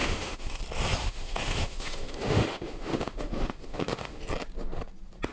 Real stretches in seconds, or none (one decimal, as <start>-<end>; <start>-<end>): 0.6-1.0; 4.2-5.3